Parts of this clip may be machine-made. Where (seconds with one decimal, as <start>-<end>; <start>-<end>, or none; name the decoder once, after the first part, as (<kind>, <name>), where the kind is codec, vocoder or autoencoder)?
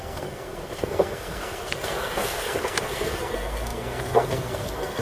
0.0-5.0 (codec, SNAC)